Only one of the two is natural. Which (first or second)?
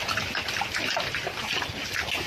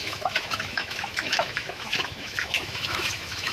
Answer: first